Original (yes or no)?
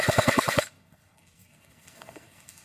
no